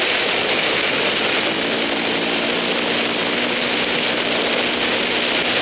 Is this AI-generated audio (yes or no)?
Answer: no